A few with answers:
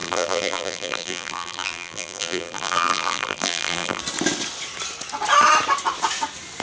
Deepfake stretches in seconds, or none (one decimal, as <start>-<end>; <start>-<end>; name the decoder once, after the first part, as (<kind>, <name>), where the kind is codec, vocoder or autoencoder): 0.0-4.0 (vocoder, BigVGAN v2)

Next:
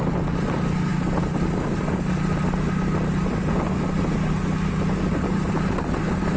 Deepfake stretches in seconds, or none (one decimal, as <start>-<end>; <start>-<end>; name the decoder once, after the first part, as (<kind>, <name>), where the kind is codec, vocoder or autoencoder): none

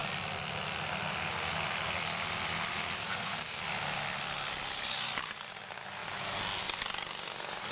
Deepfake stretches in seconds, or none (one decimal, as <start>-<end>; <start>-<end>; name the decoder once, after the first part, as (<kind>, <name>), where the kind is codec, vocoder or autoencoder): 3.0-3.6 (codec, SNAC)